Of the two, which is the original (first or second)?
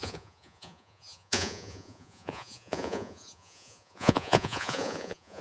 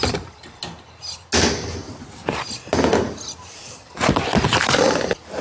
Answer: second